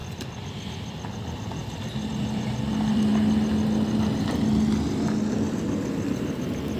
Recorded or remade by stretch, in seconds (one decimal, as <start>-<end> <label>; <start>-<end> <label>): 0.0-0.7 recorded; 0.7-3.1 remade; 3.1-5.5 recorded; 5.5-6.8 remade